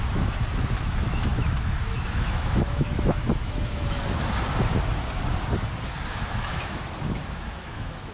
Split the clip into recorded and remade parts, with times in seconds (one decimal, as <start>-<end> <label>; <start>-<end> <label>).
0.0-4.0 remade; 4.0-6.1 recorded; 6.1-8.1 remade